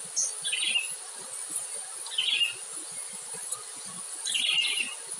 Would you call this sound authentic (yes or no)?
yes